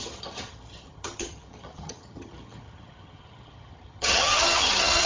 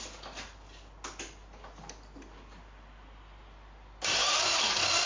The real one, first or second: second